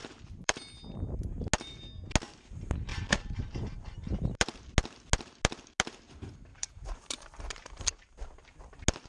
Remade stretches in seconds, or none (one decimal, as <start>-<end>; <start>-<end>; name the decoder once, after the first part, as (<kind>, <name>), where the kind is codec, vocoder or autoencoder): 0.0-0.6 (vocoder, BigVGAN v2); 2.9-4.7; 6.5-8.6